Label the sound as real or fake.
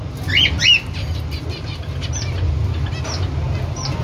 real